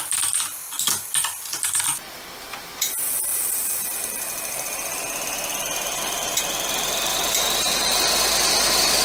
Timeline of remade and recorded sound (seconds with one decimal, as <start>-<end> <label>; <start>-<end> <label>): 0.0-7.1 recorded; 7.1-8.0 remade; 8.0-9.0 recorded